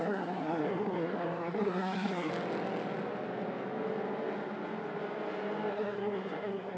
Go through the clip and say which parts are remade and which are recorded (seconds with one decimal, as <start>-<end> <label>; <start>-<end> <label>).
0.0-2.3 remade; 2.3-5.7 recorded; 5.7-6.8 remade